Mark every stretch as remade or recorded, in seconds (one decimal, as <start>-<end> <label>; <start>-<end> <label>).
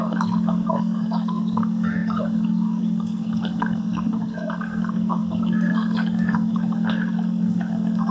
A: 0.0-8.1 remade